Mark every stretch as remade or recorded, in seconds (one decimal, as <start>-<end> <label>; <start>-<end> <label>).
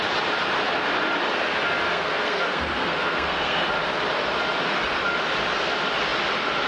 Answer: 0.0-1.9 recorded; 1.9-3.7 remade; 3.7-6.7 recorded